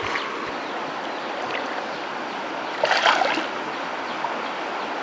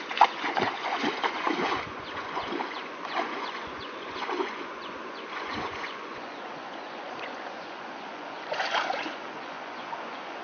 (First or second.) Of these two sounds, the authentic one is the first